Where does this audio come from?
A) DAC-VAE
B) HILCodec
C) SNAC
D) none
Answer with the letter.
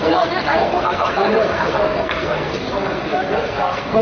C